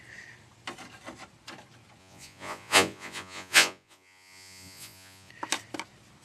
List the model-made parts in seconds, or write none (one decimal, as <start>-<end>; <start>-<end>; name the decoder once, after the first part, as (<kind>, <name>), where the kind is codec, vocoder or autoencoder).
2.0-5.3 (vocoder, Vocos)

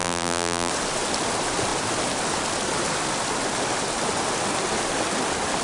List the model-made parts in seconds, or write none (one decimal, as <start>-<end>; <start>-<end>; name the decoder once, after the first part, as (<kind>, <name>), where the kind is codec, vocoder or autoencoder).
0.0-0.7 (vocoder, BigVGAN v2)

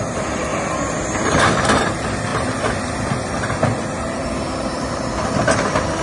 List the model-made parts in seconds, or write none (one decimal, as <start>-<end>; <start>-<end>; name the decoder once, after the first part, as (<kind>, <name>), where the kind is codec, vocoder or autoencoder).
0.0-6.0 (vocoder, BigVGAN v2)